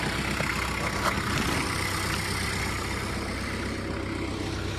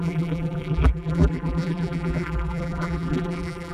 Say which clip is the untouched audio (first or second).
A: first